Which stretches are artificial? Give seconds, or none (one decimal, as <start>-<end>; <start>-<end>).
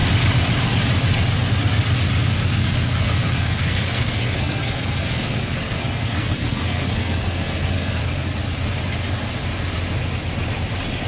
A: 2.3-8.0